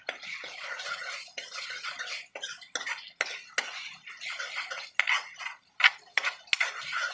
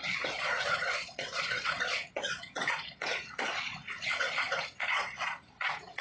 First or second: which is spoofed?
second